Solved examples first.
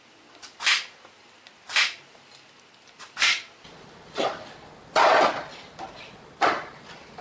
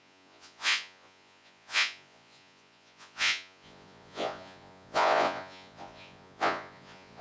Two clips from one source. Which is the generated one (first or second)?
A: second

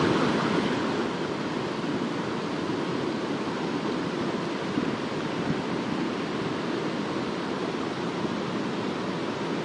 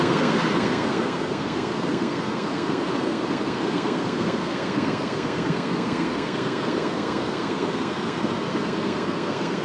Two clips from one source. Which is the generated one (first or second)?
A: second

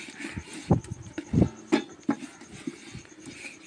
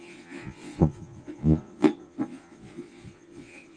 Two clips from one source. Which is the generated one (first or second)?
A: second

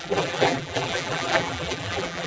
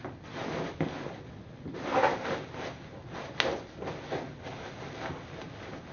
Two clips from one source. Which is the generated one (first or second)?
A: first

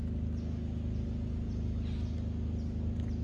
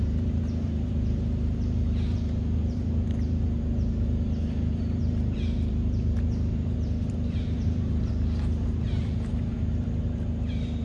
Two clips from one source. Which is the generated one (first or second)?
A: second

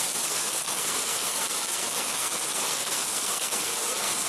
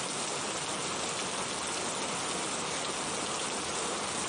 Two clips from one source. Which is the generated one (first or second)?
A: first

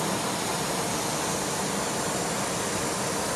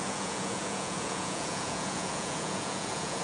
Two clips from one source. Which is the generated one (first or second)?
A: second